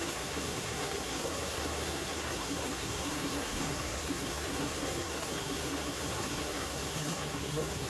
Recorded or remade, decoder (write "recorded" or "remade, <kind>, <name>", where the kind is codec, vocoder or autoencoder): remade, codec, SNAC